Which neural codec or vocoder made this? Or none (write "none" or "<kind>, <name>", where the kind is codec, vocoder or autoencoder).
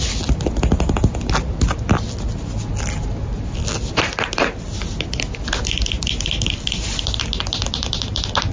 none